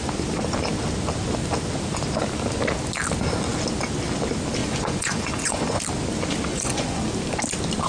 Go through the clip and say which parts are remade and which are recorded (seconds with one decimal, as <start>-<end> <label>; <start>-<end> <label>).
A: 0.0-4.6 recorded; 4.6-5.8 remade; 5.8-6.5 recorded; 6.5-7.0 remade; 7.0-7.9 recorded